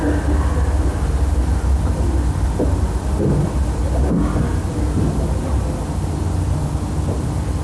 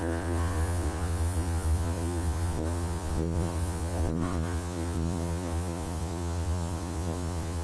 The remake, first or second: second